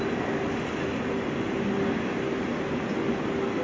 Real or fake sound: real